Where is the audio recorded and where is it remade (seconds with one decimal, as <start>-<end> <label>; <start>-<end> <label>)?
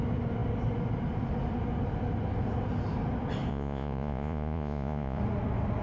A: 0.0-3.5 recorded; 3.5-5.2 remade; 5.2-5.8 recorded